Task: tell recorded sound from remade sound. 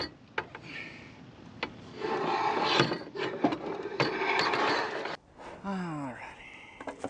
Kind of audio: recorded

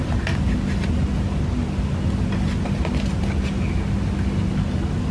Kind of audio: recorded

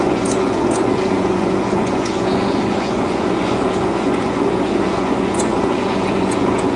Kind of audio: remade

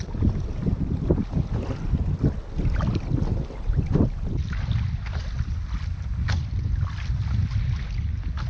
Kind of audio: recorded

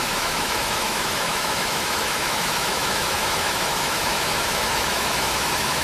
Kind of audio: remade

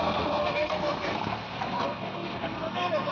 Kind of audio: remade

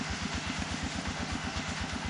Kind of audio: remade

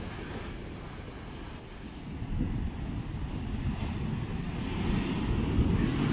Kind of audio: recorded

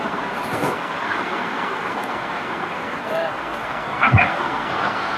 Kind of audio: remade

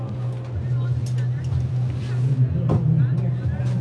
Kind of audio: recorded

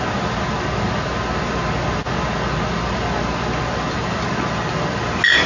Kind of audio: recorded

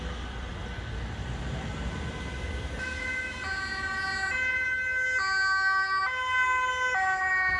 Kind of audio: recorded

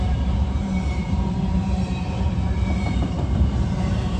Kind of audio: remade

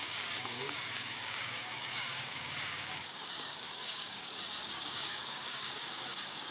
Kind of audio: remade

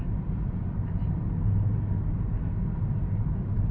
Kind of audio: recorded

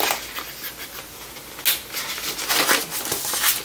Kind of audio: recorded